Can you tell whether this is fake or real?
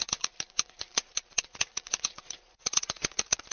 fake